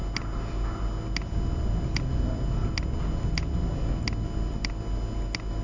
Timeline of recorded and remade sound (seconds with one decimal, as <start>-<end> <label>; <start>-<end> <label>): 0.0-5.6 recorded